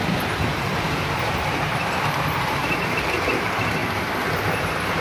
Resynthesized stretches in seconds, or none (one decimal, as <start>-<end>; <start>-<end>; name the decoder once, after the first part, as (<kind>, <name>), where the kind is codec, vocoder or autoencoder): 0.0-3.8 (vocoder, BigVGAN v2); 4.4-5.0